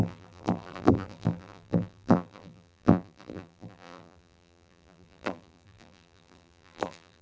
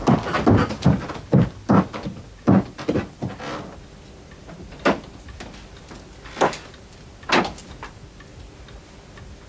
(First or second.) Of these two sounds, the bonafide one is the second